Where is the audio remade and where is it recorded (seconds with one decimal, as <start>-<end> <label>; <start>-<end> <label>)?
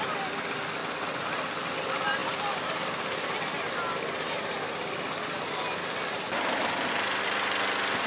0.0-0.8 recorded; 0.8-1.6 remade; 1.6-8.1 recorded